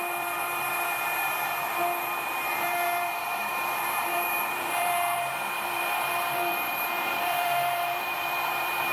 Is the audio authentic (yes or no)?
no